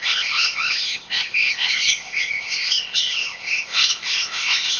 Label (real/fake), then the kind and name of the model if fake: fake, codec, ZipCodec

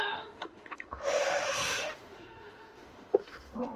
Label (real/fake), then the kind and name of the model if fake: fake, autoencoder, DAC-VAE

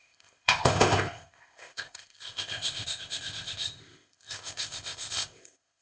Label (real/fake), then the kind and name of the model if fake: fake, codec, ZipCodec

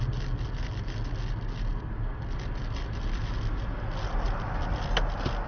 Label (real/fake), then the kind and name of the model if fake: real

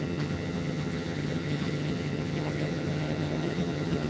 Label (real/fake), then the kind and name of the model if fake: fake, vocoder, HiFi-GAN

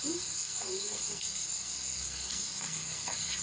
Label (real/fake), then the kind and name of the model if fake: fake, codec, SNAC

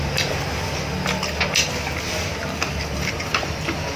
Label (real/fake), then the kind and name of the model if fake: real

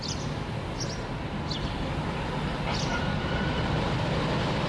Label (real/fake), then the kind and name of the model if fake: real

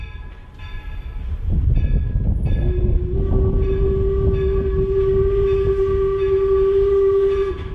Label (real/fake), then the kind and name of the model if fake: real